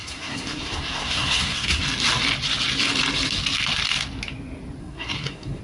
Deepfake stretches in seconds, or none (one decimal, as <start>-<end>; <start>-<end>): 0.0-1.8; 4.8-5.6